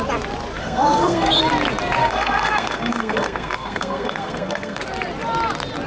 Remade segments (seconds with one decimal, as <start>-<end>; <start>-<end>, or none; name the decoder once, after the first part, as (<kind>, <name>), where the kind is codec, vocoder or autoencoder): 0.6-1.4 (codec, SNAC); 2.0-4.8